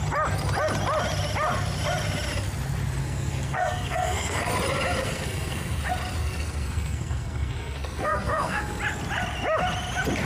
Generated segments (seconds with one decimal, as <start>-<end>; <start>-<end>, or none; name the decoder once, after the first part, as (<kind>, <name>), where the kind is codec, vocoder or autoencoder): 3.0-4.5 (codec, SNAC); 5.0-5.8; 6.2-8.8